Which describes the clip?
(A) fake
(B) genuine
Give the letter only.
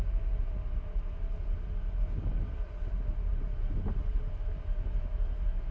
B